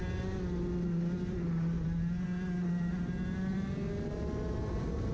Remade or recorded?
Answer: recorded